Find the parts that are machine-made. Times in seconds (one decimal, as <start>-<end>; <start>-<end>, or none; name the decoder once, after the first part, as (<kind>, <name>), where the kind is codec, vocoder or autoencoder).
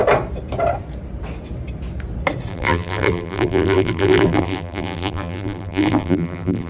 2.5-6.7 (vocoder, BigVGAN v2)